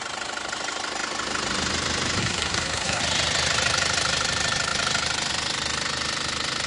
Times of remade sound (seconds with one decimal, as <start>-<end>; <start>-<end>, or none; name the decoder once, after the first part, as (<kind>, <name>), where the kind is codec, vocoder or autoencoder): 2.2-3.0 (codec, SNAC)